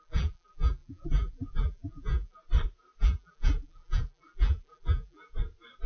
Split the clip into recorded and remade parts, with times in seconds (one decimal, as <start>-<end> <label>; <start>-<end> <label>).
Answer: 0.0-2.4 remade; 2.4-3.0 recorded; 3.0-5.3 remade; 5.3-5.9 recorded